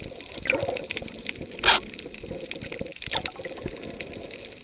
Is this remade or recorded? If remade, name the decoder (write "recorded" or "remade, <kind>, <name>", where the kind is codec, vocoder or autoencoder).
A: recorded